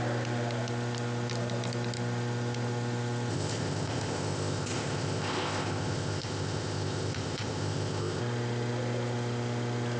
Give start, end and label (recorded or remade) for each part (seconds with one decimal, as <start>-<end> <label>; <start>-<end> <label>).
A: 0.0-3.3 recorded; 3.3-8.2 remade; 8.2-10.0 recorded